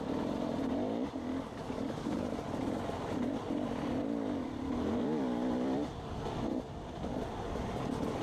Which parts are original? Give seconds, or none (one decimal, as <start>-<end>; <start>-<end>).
0.0-1.3; 2.3-8.2